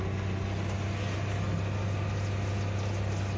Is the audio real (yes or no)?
yes